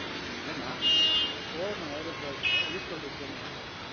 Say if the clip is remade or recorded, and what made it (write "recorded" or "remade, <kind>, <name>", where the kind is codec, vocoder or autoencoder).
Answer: recorded